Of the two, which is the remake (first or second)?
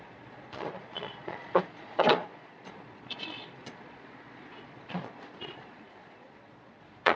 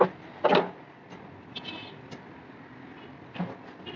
first